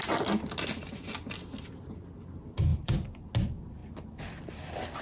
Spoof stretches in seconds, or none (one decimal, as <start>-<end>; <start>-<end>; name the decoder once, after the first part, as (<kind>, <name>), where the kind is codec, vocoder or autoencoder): 2.7-3.3 (vocoder, BigVGAN v2)